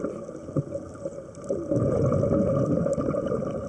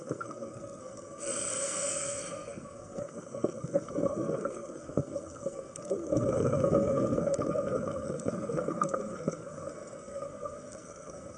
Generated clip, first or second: second